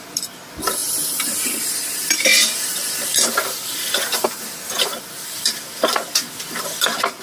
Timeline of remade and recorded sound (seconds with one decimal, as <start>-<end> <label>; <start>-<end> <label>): 0.0-2.3 recorded; 2.3-6.6 remade; 6.6-7.2 recorded